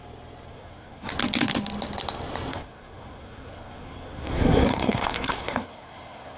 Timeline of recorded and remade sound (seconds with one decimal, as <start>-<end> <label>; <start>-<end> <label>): 0.0-0.5 recorded; 0.5-1.1 remade; 1.1-2.5 recorded; 2.5-6.4 remade